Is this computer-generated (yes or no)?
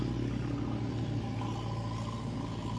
no